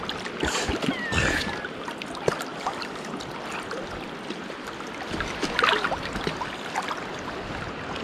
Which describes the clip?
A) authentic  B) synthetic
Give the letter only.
A